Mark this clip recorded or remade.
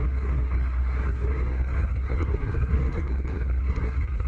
remade